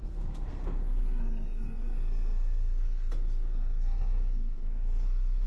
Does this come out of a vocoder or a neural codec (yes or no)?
yes